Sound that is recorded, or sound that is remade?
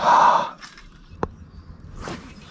remade